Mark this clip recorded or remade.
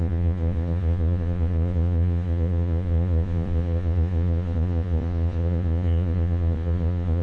remade